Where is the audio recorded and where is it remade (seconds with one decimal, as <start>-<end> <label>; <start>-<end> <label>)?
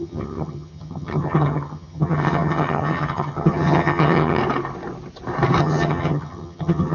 0.0-4.4 remade; 4.4-5.6 recorded; 5.6-6.9 remade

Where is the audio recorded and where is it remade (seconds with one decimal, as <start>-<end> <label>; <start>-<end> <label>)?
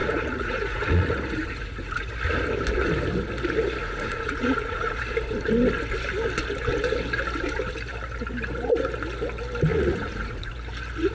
0.0-2.1 remade; 2.1-3.8 recorded; 3.8-5.0 remade; 5.0-9.7 recorded; 9.7-10.5 remade; 10.5-11.1 recorded